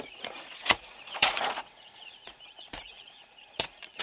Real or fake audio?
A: fake